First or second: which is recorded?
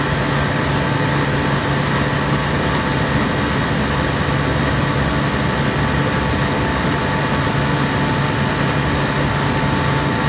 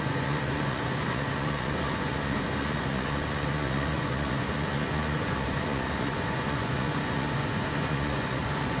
first